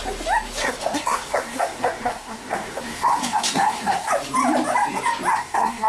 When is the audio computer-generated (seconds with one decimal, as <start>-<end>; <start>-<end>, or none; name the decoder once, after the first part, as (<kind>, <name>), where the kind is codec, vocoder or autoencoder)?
0.6-4.1 (codec, SNAC); 5.3-5.9